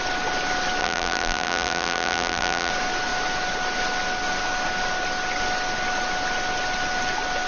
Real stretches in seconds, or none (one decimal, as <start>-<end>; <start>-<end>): 0.0-0.8; 2.7-7.5